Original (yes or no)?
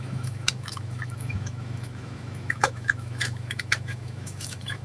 no